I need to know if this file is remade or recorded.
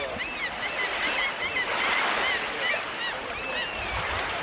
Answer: recorded